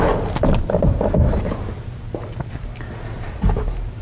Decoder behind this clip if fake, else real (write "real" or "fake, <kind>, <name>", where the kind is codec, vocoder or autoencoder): real